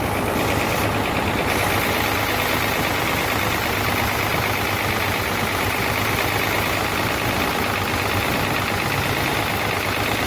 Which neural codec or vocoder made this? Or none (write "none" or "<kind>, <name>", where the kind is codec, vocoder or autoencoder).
none